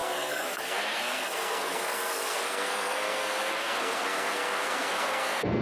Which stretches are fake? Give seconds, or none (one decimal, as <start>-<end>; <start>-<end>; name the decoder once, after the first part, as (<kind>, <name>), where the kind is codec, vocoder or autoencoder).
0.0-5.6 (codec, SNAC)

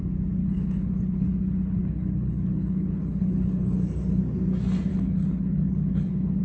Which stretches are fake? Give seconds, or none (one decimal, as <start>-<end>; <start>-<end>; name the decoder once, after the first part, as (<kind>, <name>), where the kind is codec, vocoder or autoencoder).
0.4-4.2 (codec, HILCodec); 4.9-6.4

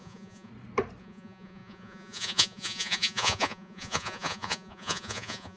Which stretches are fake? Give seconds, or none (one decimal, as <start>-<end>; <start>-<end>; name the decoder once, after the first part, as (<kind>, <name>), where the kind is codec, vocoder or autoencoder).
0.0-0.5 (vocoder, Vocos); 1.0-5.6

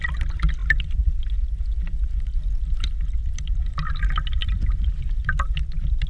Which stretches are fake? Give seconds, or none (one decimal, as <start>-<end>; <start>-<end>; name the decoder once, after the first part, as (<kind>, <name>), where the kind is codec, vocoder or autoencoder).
none

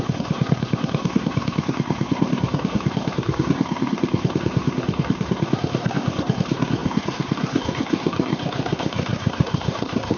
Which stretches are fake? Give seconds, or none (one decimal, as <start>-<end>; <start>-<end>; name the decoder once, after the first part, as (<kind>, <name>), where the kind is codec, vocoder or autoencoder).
0.0-10.2 (codec, SNAC)

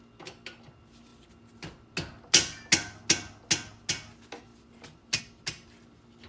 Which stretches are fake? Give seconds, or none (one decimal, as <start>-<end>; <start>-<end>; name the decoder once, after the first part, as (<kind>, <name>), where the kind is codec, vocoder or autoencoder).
none

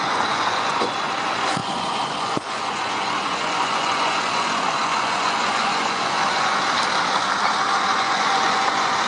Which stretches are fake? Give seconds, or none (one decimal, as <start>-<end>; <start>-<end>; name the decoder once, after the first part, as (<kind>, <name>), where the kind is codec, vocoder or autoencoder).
0.0-6.6 (vocoder, Vocos); 7.7-9.1

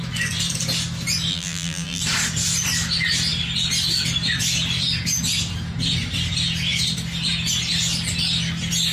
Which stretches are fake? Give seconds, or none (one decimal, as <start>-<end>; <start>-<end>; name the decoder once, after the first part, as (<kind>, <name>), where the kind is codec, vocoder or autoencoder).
1.3-2.0 (vocoder, BigVGAN v2)